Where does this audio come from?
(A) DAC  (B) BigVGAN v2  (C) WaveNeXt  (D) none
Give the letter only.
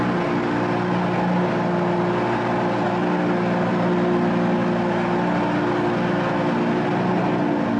D